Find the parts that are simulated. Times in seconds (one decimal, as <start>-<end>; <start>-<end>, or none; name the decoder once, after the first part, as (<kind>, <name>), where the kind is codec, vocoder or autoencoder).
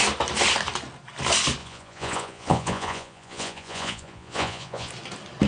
1.6-4.9 (vocoder, Vocos)